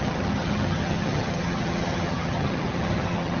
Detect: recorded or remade remade